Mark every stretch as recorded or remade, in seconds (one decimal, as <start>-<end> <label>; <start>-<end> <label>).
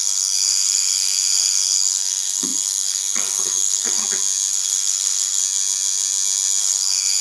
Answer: 0.0-4.0 remade; 4.0-4.5 recorded; 4.5-5.4 remade; 5.4-6.6 recorded; 6.6-7.2 remade